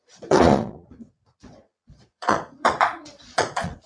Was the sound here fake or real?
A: fake